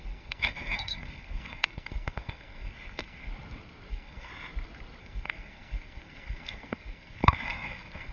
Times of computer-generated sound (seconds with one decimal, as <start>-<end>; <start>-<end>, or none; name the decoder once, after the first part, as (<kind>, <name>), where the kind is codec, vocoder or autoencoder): 0.0-3.3 (codec, SNAC); 3.9-4.3; 5.0-8.1

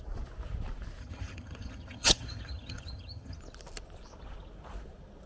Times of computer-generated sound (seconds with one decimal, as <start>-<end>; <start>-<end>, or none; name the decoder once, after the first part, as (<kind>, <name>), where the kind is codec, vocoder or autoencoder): 1.0-3.4 (vocoder, HiFi-GAN)

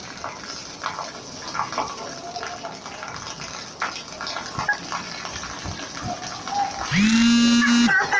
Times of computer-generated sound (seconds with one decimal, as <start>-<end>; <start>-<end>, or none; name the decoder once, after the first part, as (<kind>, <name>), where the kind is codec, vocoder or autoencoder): none

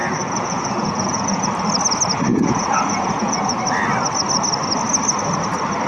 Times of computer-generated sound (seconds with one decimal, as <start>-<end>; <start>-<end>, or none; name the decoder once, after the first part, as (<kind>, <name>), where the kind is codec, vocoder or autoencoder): 0.0-1.5 (vocoder, Vocos); 2.3-3.6

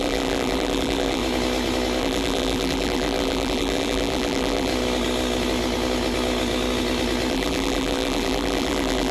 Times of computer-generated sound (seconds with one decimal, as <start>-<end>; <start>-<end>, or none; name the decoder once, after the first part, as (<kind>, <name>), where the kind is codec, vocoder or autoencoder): 0.0-1.2 (vocoder, BigVGAN v2); 2.0-4.7; 7.3-9.1

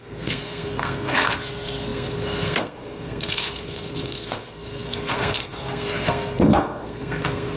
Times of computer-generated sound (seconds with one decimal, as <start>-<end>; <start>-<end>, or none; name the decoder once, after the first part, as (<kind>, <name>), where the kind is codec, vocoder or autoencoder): 0.0-7.6 (codec, SNAC)

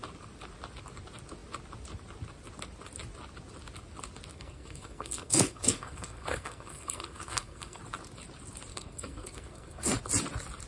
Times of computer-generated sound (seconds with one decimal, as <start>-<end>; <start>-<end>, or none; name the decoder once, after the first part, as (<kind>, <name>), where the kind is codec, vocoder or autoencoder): 4.3-7.8 (codec, SNAC); 8.7-10.0